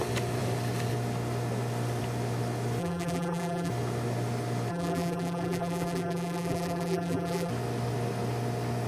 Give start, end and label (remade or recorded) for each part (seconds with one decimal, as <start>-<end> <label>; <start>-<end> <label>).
0.0-2.8 recorded; 2.8-3.7 remade; 3.7-4.7 recorded; 4.7-7.5 remade; 7.5-8.9 recorded